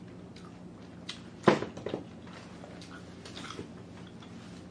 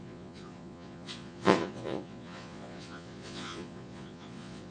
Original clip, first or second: first